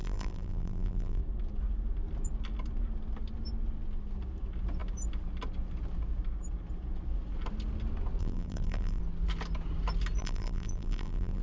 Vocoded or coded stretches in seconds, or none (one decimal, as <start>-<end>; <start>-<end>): 0.0-1.2; 8.2-9.0; 10.2-11.4